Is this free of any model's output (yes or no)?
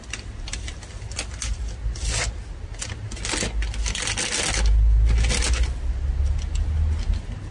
yes